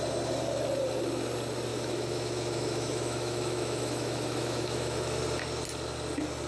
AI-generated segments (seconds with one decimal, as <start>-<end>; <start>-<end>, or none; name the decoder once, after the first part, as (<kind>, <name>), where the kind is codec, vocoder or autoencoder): 1.7-5.2 (autoencoder, DAC-VAE)